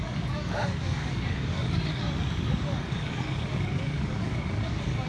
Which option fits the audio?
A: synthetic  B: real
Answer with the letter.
A